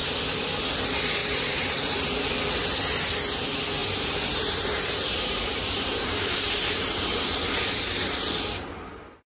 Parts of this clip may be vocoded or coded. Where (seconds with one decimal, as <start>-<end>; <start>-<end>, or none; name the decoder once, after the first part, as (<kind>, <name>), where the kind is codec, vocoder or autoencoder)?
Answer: 1.2-2.3 (vocoder, BigVGAN v2); 3.8-7.8

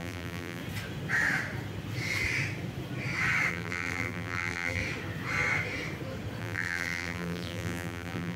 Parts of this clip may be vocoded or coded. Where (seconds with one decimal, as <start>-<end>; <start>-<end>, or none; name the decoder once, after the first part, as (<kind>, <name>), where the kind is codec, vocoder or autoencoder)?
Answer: 0.0-0.6 (vocoder, BigVGAN v2); 3.5-4.8; 6.4-8.4

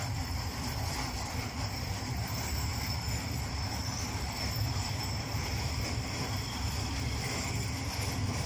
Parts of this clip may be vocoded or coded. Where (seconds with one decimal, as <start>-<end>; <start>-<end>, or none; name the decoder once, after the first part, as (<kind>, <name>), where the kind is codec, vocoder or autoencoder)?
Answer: 0.0-1.4 (vocoder, BigVGAN v2)